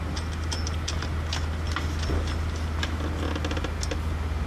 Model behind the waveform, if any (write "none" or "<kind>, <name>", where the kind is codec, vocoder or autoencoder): none